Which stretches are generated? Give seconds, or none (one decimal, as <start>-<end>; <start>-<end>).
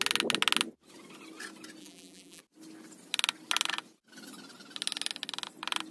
1.8-2.4